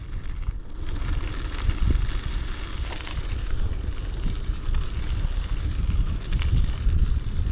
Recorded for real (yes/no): yes